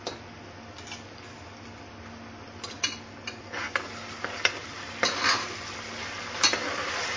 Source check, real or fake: real